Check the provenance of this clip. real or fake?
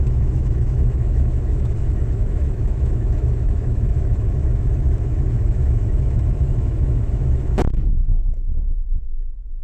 fake